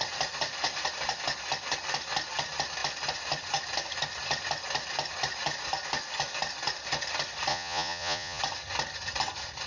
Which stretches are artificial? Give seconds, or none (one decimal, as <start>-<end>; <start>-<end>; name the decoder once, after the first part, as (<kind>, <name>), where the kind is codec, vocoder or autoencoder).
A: 7.5-8.4 (vocoder, Vocos)